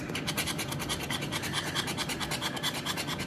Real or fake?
fake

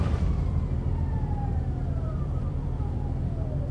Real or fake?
fake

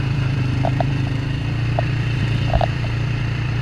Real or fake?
fake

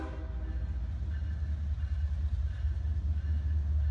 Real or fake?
real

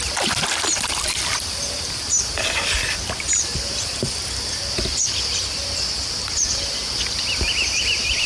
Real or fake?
fake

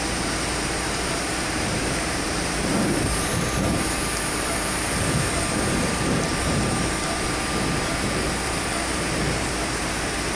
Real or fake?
fake